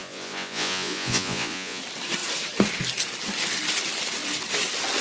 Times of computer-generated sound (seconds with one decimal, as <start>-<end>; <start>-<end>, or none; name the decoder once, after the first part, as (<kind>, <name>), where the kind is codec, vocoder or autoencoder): 0.0-1.8 (vocoder, Vocos)